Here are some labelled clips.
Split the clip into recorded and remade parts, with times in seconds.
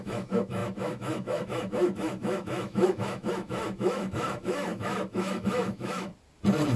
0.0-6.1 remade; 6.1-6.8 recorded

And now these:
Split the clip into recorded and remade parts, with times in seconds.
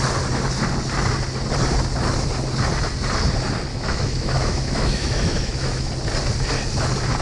0.0-3.7 recorded; 3.7-5.9 remade; 5.9-7.2 recorded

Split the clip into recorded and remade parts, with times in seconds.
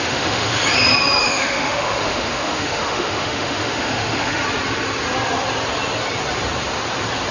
0.0-0.6 remade; 0.6-1.2 recorded; 1.2-4.4 remade; 4.4-7.3 recorded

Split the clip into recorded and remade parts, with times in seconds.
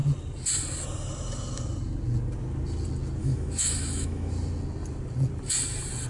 0.0-3.2 recorded; 3.2-4.3 remade; 4.3-6.1 recorded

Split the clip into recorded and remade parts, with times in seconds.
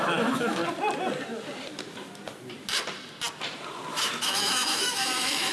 0.0-0.6 remade; 0.6-3.9 recorded; 3.9-5.5 remade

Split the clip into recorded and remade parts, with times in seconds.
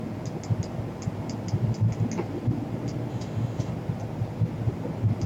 0.0-3.1 recorded; 3.1-3.7 remade; 3.7-5.3 recorded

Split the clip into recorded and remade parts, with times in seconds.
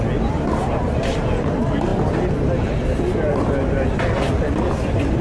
0.0-5.2 recorded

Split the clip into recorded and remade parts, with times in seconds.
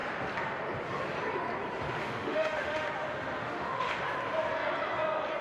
0.0-2.0 recorded; 2.0-2.9 remade; 2.9-3.4 recorded; 3.4-3.9 remade; 3.9-5.4 recorded